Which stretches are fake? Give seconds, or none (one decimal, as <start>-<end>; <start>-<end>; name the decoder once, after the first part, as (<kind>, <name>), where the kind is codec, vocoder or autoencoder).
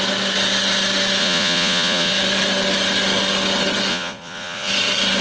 1.2-2.1 (vocoder, Vocos); 3.9-4.7